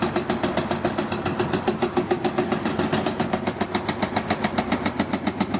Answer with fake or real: real